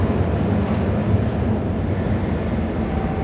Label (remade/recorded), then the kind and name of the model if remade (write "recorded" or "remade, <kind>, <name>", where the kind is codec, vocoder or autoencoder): recorded